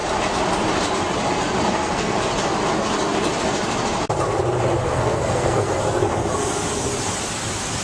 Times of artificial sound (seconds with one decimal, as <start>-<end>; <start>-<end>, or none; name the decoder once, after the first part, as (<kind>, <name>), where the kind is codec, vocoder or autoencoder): 1.7-2.2 (codec, SNAC); 4.8-5.8